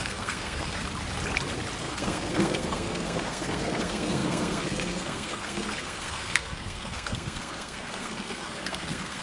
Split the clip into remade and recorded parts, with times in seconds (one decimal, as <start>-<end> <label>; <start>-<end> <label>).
0.0-0.8 remade; 0.8-1.8 recorded; 1.8-9.2 remade